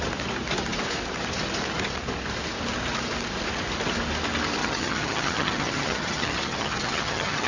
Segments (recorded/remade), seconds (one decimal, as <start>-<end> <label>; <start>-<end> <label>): 0.0-4.6 recorded; 4.6-7.5 remade